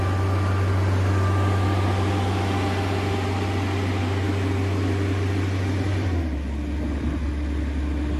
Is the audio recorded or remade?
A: recorded